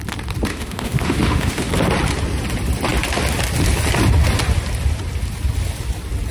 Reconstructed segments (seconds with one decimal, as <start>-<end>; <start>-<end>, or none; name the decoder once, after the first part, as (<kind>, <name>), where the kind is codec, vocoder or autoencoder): 0.5-1.7 (autoencoder, DAC-VAE)